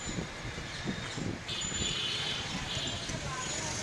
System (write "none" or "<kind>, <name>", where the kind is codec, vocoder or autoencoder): none